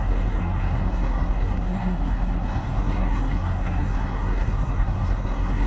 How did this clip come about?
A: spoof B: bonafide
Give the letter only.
A